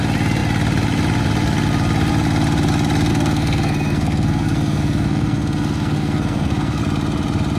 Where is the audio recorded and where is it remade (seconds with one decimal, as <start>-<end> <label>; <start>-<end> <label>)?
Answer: 0.0-3.1 recorded; 3.1-6.8 remade; 6.8-7.6 recorded